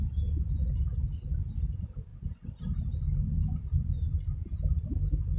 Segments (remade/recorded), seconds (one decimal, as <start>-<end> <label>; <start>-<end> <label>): 0.0-5.4 recorded